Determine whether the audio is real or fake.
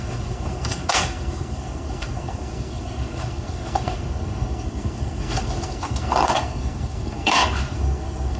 fake